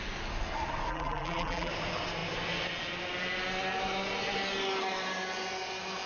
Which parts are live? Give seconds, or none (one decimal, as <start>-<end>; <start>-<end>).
0.0-0.9; 1.7-6.1